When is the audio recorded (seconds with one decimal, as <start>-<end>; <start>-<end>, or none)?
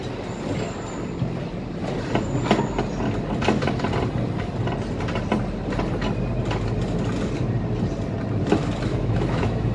0.0-8.9